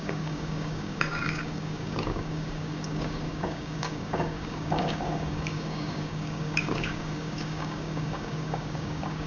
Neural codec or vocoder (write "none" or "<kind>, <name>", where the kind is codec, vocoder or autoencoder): codec, DAC